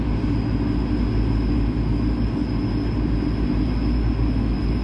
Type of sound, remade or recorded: recorded